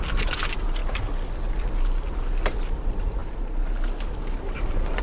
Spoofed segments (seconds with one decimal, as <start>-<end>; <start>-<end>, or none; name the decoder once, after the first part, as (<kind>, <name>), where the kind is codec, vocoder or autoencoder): none